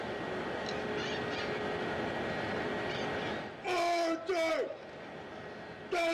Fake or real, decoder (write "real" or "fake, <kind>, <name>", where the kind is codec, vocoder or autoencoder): real